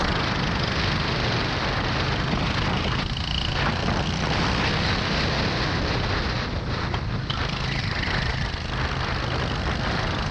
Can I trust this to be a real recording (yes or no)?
yes